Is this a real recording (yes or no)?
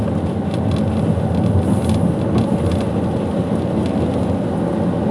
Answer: yes